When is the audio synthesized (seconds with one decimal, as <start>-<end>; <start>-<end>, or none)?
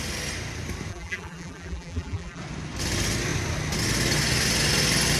0.9-2.4